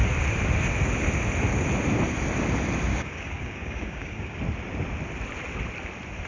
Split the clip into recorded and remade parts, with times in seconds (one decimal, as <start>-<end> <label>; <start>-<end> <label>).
0.0-2.9 recorded; 2.9-4.4 remade; 4.4-6.3 recorded